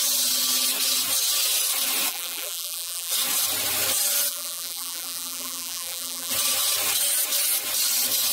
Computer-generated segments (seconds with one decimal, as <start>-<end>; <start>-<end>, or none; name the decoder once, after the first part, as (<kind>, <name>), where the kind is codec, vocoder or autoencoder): 2.1-3.1 (vocoder, BigVGAN v2); 4.3-6.3